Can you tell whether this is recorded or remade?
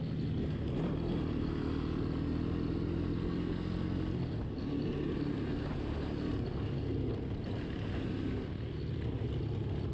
recorded